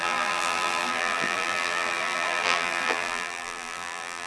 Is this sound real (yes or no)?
no